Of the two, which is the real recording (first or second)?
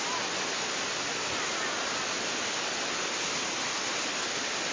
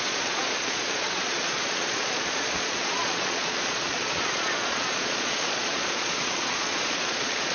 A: first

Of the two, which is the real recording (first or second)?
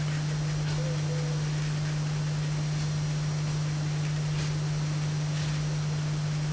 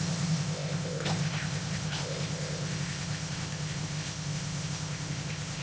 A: first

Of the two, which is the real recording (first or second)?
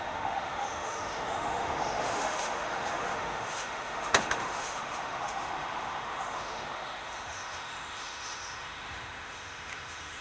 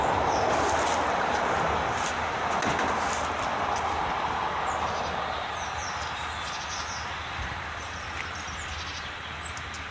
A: second